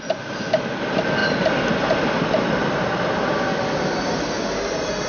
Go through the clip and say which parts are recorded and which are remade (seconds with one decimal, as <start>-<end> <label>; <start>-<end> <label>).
0.0-5.1 recorded